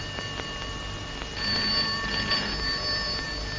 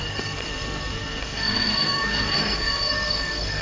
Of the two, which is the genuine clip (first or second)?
first